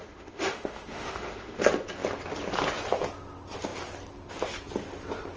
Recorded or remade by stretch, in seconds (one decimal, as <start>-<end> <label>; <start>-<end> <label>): 0.0-1.6 remade; 1.6-5.4 recorded